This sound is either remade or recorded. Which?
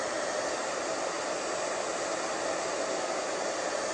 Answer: recorded